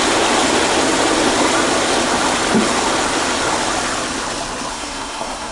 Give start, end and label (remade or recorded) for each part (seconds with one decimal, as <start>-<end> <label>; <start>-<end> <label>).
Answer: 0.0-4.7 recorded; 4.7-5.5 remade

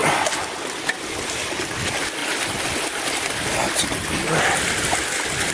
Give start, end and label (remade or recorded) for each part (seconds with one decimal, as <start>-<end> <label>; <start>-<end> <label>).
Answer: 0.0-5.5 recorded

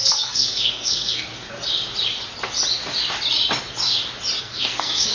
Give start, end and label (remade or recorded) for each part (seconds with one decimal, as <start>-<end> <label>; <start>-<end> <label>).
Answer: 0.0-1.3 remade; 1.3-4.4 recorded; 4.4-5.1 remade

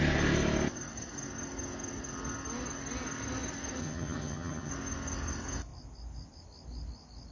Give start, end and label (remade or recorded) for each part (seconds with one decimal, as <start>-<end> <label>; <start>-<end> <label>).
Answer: 0.0-3.8 recorded; 3.8-4.7 remade; 4.7-7.3 recorded

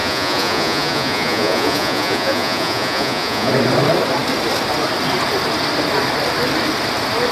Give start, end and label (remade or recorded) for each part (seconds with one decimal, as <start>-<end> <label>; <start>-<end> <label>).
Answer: 0.0-3.5 remade; 3.5-7.3 recorded